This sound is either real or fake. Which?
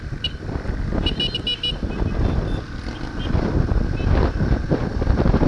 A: real